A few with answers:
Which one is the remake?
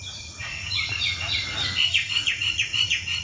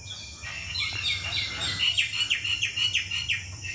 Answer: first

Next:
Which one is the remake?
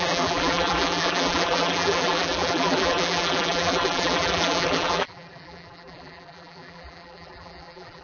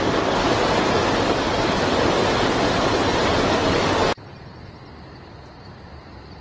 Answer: first